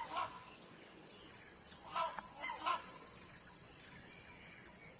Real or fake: fake